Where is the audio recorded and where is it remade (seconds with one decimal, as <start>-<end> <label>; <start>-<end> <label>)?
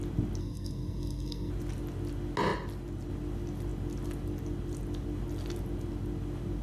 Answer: 0.0-0.4 recorded; 0.4-1.5 remade; 1.5-6.6 recorded